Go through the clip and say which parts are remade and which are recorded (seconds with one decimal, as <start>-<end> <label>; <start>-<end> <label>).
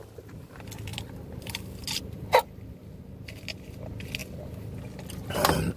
0.0-0.9 recorded; 0.9-2.7 remade; 2.7-5.8 recorded